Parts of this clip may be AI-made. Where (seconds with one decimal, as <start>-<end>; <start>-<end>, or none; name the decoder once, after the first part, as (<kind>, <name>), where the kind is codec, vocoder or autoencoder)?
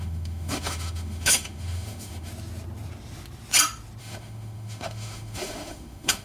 0.0-2.3 (autoencoder, DAC-VAE); 4.0-6.2